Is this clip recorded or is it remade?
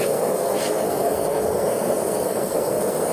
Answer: remade